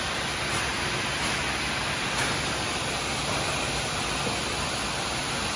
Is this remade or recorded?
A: recorded